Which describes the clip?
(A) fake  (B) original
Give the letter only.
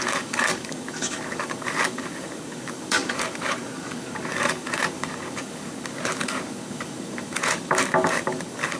A